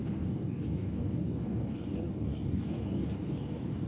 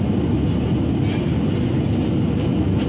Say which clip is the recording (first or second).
second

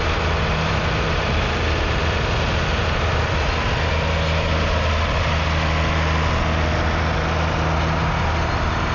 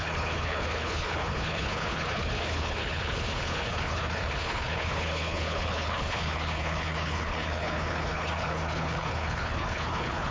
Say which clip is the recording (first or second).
first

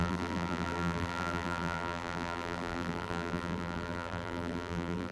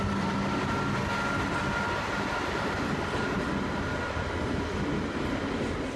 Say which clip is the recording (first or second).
second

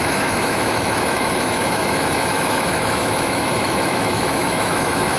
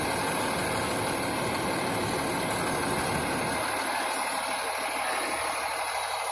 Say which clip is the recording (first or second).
second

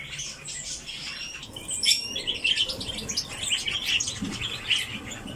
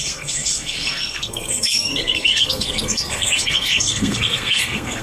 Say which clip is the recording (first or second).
first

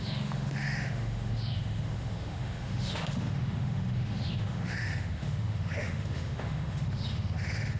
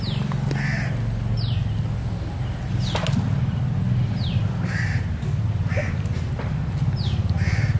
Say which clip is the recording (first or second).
second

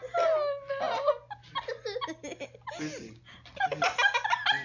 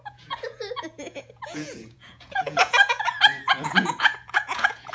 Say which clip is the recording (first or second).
first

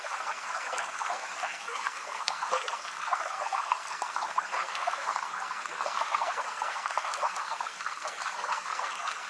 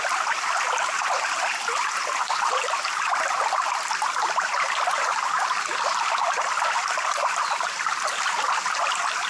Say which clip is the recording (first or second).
second